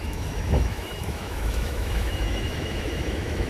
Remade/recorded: remade